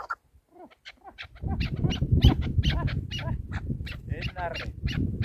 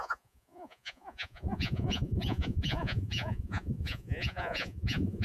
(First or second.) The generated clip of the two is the second